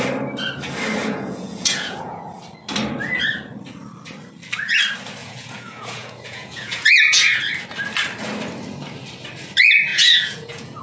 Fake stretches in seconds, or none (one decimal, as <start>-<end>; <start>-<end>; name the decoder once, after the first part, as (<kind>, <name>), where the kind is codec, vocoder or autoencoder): 1.0-2.2 (vocoder, Vocos); 5.2-7.4; 9.9-10.8